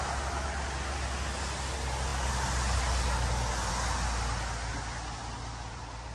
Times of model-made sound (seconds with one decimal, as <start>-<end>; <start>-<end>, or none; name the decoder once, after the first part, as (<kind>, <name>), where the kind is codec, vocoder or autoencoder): none